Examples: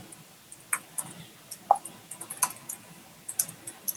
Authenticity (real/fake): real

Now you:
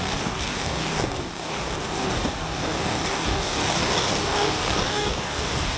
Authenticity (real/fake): fake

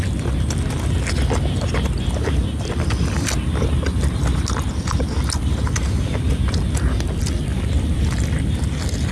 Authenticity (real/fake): real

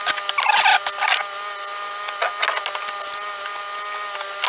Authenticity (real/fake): real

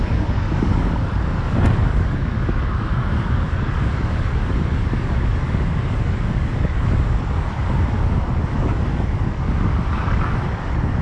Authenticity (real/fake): fake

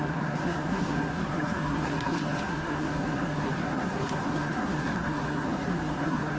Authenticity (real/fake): fake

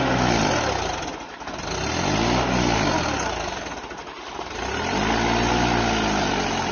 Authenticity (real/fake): real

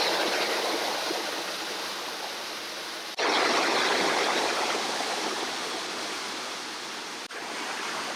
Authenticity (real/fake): real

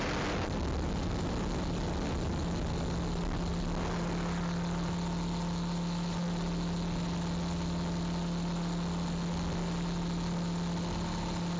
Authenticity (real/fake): real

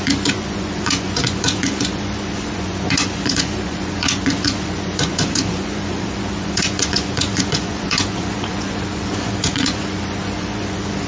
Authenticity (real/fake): fake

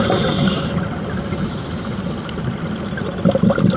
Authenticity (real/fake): real